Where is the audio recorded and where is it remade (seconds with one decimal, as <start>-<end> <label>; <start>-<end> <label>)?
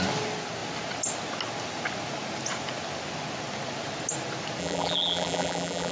0.0-4.6 recorded; 4.6-5.9 remade